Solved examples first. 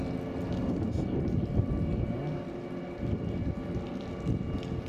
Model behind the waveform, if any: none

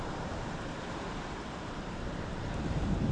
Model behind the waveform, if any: vocoder, BigVGAN v2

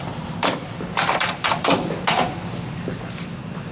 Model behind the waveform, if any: vocoder, BigVGAN v2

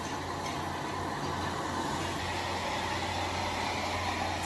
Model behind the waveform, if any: none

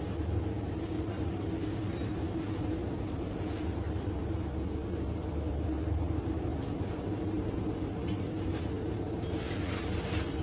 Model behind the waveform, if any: vocoder, BigVGAN v2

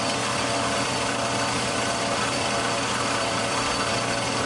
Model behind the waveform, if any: vocoder, BigVGAN v2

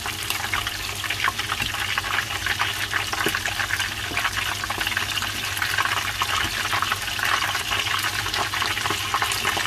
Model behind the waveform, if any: none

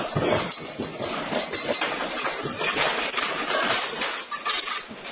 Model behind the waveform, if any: vocoder, BigVGAN v2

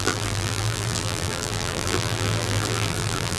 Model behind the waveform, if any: vocoder, BigVGAN v2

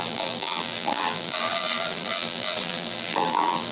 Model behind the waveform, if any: vocoder, BigVGAN v2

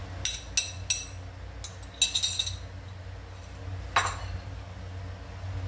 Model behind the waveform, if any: none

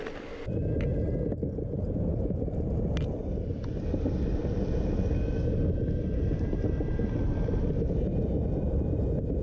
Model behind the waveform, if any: none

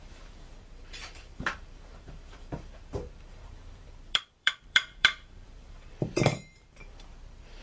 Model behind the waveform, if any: vocoder, BigVGAN v2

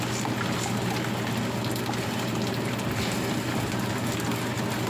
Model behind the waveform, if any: none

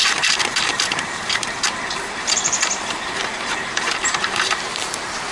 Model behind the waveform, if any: vocoder, BigVGAN v2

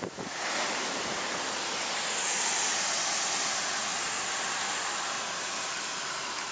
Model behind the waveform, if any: none